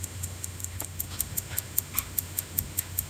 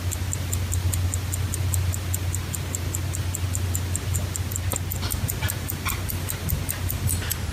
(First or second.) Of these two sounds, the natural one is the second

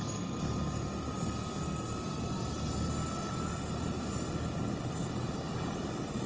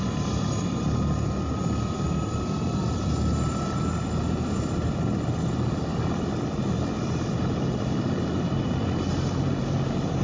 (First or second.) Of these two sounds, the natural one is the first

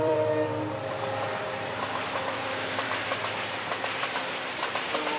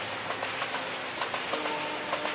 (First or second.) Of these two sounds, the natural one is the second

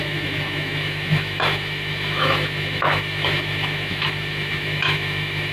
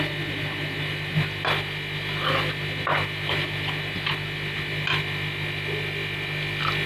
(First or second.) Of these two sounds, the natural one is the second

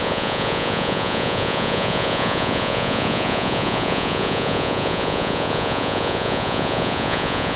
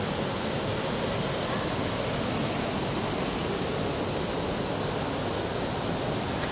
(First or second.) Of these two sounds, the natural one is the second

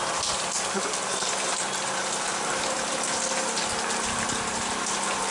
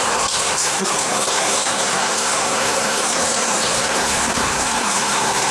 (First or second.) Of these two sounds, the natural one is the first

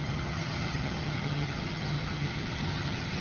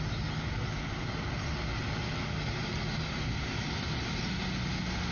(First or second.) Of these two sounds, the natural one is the second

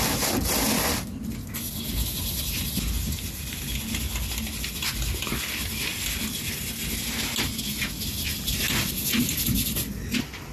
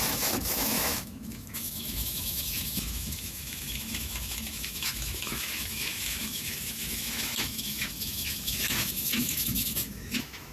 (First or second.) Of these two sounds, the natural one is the first